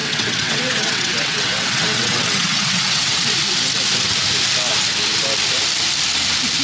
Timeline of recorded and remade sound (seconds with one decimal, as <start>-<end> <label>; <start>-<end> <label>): 0.0-3.2 remade; 3.2-6.6 recorded